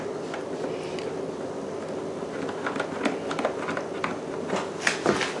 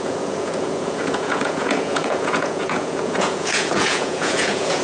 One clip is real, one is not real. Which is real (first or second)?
first